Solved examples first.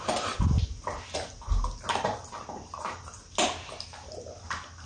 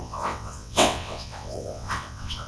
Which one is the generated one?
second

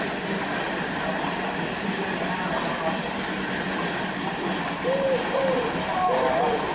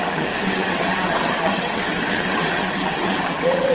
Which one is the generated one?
second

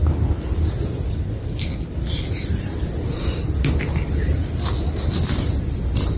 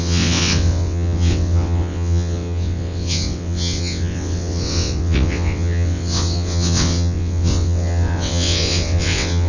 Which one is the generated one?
second